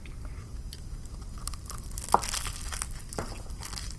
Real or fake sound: real